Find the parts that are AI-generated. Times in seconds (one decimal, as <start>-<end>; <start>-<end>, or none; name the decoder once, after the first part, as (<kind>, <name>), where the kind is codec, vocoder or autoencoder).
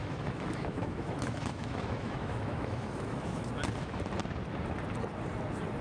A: 0.0-3.5 (autoencoder, DAC-VAE)